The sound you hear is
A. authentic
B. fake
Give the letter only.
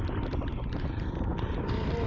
A